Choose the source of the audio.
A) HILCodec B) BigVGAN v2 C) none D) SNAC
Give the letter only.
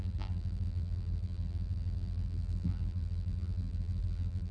B